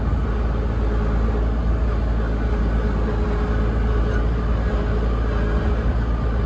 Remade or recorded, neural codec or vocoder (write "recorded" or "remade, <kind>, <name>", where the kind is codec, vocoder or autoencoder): recorded